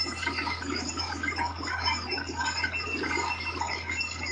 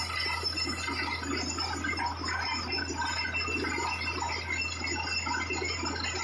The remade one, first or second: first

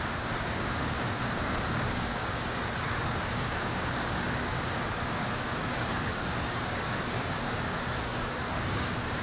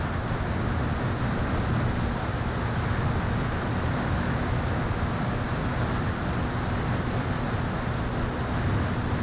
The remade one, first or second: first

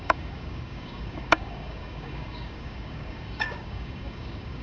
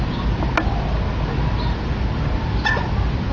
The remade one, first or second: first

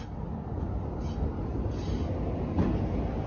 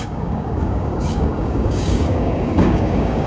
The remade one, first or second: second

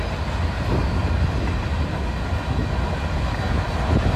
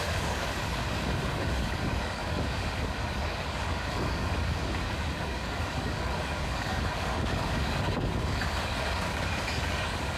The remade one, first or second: second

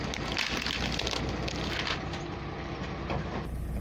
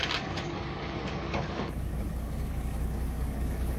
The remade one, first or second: second